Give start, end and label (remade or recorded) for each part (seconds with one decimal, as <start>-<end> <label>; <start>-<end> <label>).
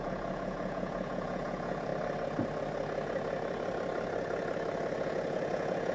0.0-1.9 remade; 1.9-5.0 recorded; 5.0-5.9 remade